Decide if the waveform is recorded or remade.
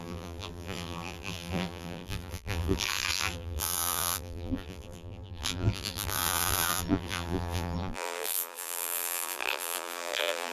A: remade